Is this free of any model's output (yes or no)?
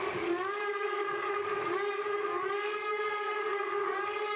no